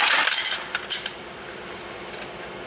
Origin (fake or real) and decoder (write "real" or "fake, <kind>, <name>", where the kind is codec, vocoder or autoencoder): real